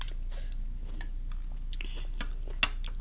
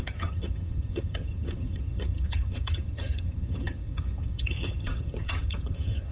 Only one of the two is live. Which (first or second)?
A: first